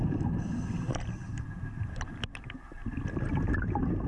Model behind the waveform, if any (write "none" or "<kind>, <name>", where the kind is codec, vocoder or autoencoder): none